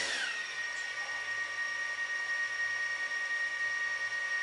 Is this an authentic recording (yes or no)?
yes